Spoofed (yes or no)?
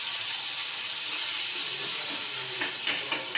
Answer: no